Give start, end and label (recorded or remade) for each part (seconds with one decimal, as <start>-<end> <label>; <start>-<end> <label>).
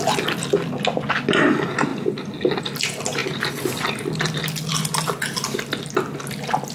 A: 0.0-6.7 recorded